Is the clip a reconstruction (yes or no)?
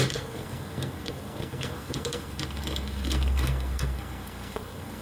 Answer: yes